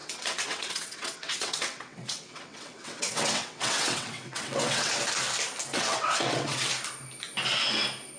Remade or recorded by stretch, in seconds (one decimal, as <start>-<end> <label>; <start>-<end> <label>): 0.0-4.9 remade; 4.9-5.7 recorded; 5.7-6.7 remade; 6.7-8.2 recorded